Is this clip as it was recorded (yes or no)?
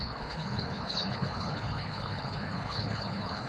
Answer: no